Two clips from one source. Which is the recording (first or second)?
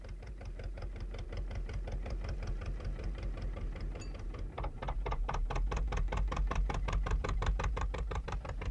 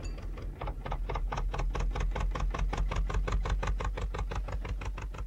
second